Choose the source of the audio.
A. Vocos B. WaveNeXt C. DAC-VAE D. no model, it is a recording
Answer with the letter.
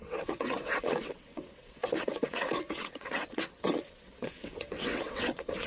B